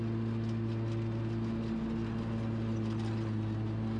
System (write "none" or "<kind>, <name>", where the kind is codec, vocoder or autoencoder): none